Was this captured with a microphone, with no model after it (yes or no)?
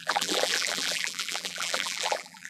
no